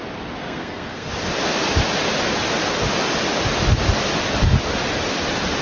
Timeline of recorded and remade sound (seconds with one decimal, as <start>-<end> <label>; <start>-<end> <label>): 0.0-0.4 recorded; 0.4-1.1 remade; 1.1-5.6 recorded